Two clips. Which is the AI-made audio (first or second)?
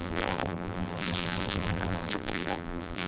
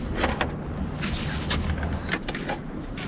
first